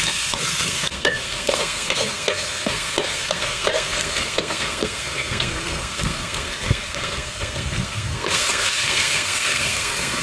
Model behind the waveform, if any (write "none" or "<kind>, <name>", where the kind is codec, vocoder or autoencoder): codec, SNAC